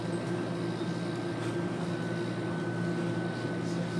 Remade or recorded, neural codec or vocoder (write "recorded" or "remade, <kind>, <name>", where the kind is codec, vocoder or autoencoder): recorded